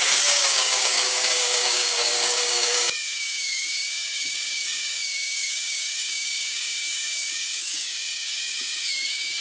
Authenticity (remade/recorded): remade